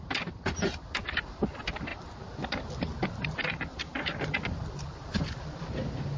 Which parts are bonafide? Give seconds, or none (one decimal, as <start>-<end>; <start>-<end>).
0.0-6.2